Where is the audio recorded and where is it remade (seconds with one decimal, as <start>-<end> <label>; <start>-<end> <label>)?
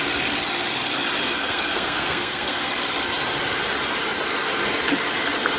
0.0-1.2 recorded; 1.2-2.7 remade; 2.7-5.6 recorded